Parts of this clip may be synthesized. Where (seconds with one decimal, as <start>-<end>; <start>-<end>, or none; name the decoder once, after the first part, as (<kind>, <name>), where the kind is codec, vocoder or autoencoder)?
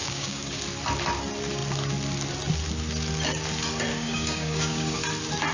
0.0-0.6 (codec, DAC); 3.9-5.0